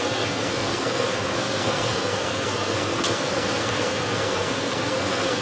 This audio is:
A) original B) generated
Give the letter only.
B